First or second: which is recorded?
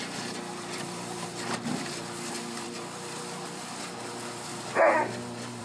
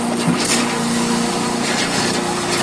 second